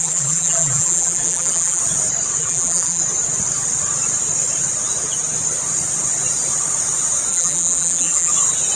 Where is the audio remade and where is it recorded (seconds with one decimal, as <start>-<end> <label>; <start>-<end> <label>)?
0.0-1.8 remade; 1.8-2.4 recorded; 2.4-3.0 remade; 3.0-7.3 recorded; 7.3-8.3 remade; 8.3-8.8 recorded